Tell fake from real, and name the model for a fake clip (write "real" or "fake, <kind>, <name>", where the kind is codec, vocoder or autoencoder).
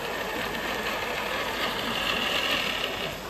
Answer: real